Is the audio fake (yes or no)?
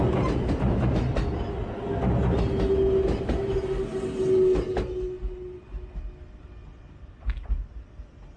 no